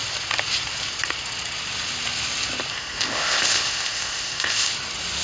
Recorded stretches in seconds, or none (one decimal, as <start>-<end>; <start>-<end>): 0.0-2.7; 4.7-5.2